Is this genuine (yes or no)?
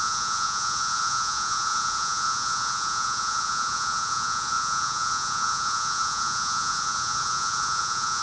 no